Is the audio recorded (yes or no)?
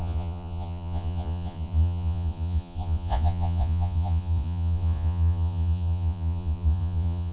no